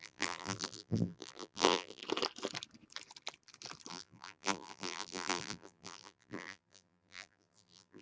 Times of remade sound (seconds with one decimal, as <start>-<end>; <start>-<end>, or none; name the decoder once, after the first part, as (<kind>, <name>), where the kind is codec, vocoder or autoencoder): 0.0-2.0 (vocoder, BigVGAN v2); 3.9-8.0